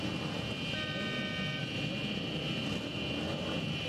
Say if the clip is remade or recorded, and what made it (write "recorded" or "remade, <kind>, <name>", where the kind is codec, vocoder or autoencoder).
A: recorded